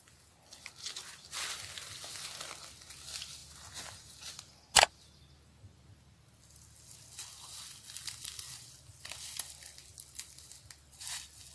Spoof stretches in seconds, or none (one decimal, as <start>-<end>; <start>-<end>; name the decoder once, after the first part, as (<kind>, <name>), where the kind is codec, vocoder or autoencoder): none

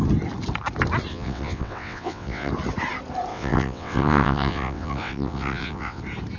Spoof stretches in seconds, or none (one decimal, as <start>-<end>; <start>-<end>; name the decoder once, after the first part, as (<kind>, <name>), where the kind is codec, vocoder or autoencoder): 1.1-2.5 (vocoder, WaveNeXt); 3.3-6.0

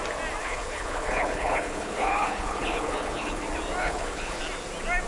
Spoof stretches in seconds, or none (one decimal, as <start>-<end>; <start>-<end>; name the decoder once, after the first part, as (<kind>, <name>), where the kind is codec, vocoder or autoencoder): 0.4-3.4 (codec, HILCodec); 3.8-4.4

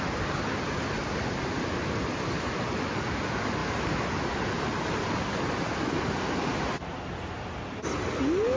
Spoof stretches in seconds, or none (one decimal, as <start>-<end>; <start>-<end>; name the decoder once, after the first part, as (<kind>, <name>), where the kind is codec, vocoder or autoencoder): none

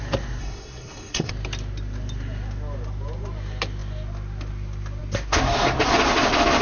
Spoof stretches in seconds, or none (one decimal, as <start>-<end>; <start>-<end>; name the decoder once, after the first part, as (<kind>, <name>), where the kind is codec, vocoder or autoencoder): 0.4-1.3 (codec, SNAC)

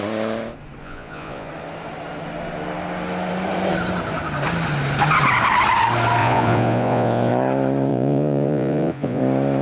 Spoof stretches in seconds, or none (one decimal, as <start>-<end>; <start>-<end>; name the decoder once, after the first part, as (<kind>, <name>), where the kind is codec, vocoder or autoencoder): 0.8-1.5 (vocoder, Vocos); 6.2-7.3; 7.9-9.2

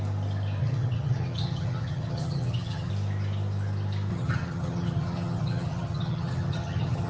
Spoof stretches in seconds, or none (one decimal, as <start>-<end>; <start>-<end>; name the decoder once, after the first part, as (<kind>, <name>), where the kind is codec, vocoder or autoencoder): 0.6-2.9 (vocoder, HiFi-GAN); 4.1-7.1